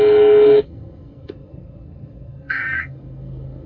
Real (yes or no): no